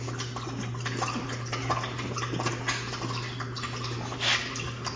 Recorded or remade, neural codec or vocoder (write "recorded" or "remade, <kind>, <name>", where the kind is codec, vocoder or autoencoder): recorded